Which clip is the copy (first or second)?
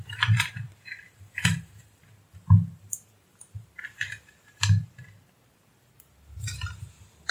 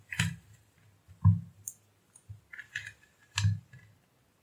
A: first